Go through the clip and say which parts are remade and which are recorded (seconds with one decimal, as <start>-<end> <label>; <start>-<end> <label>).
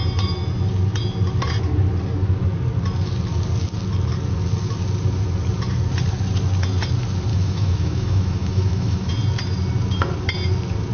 0.0-7.3 recorded; 7.3-9.1 remade; 9.1-10.9 recorded